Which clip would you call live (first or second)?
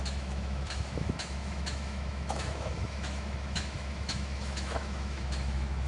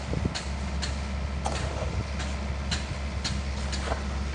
second